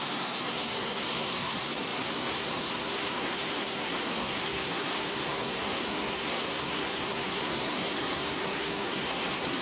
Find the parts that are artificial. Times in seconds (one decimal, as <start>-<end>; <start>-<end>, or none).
0.0-9.6